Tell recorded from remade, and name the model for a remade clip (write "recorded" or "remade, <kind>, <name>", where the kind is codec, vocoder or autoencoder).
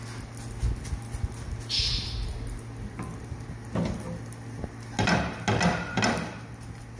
recorded